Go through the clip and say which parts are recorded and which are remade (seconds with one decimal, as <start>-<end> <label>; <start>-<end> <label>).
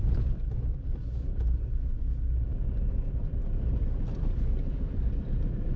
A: 0.0-5.8 recorded